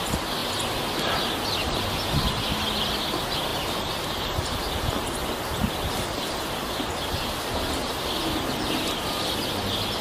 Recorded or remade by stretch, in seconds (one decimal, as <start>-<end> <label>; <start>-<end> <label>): 0.0-10.0 recorded